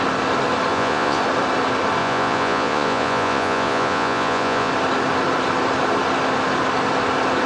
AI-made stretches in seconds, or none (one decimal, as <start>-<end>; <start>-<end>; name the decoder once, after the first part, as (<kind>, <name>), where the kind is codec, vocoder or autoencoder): 0.7-1.2 (vocoder, Vocos); 2.0-4.7